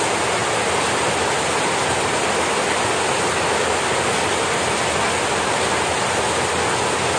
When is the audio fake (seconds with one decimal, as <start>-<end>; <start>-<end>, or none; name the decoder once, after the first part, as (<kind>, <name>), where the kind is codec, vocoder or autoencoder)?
none